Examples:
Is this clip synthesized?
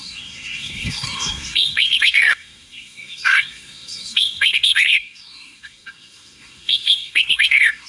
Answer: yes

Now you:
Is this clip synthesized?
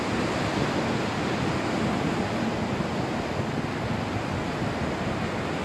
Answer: no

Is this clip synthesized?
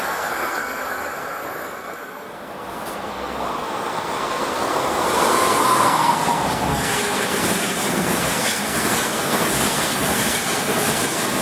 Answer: yes